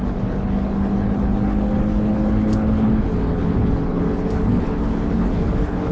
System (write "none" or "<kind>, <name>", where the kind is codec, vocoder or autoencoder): codec, HILCodec